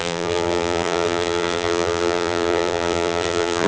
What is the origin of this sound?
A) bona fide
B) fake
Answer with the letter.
B